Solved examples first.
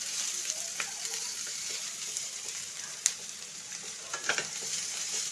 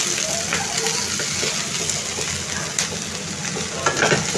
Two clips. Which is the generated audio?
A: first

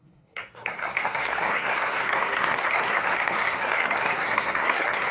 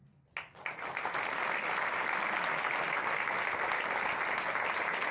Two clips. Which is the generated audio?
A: first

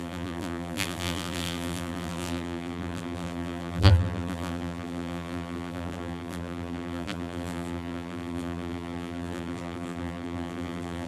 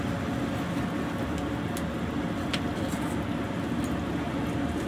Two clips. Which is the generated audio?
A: first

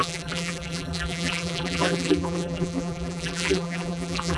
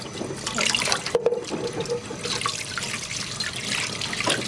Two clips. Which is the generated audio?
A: first